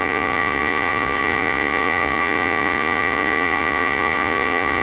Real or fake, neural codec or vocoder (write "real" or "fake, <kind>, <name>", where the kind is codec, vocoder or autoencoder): fake, vocoder, Vocos